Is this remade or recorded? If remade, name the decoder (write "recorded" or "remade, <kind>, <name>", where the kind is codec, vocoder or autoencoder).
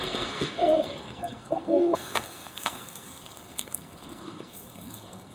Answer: remade, codec, SNAC